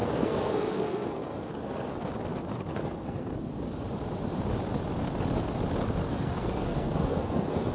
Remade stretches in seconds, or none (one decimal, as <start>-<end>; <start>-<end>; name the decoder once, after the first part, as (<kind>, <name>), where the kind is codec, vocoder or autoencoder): 0.0-1.9 (codec, SNAC); 2.5-3.3; 6.0-7.7